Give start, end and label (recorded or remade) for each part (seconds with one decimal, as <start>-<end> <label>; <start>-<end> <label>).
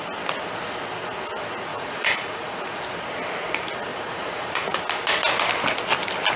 0.0-1.7 recorded; 1.7-2.8 remade; 2.8-3.9 recorded; 3.9-4.8 remade; 4.8-6.4 recorded